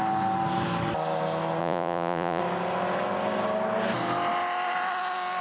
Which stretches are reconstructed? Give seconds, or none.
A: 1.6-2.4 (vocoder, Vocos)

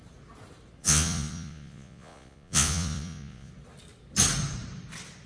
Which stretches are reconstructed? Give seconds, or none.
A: 0.8-3.5 (vocoder, Vocos)

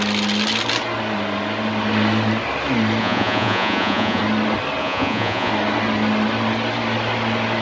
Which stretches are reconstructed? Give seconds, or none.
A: 3.0-4.2 (vocoder, Vocos); 4.8-5.5

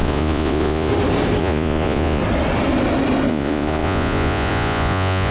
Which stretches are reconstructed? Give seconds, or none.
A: 0.0-0.9 (vocoder, Vocos); 1.4-2.2; 3.3-5.3

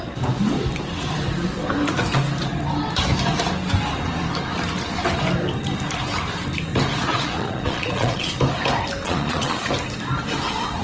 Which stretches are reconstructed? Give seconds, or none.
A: 7.1-8.3 (vocoder, Vocos); 9.0-9.7

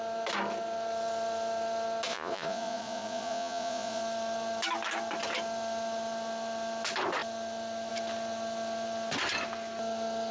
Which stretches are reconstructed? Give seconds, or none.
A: 2.1-4.0 (vocoder, Vocos)

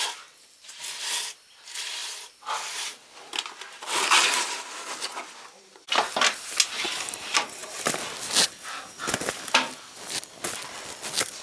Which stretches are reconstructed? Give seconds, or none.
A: none

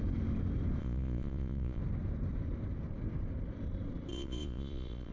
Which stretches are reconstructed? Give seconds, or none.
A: 0.8-1.8 (vocoder, Vocos); 4.1-5.1